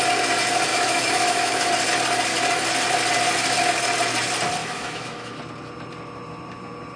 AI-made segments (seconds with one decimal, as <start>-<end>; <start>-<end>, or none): 0.7-1.7; 4.6-5.4